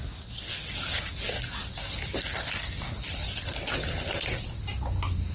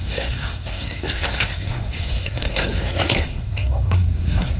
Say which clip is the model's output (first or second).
second